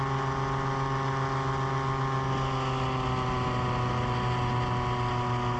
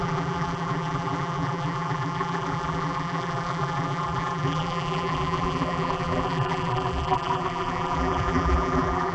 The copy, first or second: second